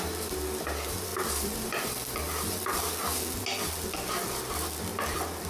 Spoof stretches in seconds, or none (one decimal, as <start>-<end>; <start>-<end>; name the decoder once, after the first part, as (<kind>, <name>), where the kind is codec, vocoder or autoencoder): none